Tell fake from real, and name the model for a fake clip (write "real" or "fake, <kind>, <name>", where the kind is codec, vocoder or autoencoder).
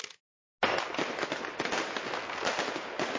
real